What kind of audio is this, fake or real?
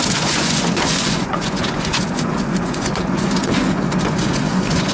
fake